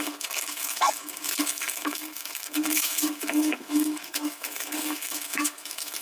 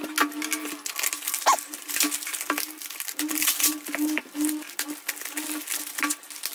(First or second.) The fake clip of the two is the first